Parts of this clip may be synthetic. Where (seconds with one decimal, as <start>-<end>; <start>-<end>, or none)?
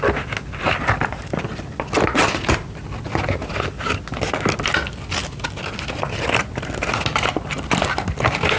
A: none